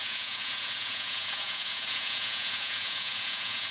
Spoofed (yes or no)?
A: yes